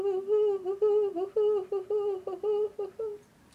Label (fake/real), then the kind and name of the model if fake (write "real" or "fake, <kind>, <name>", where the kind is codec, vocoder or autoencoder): real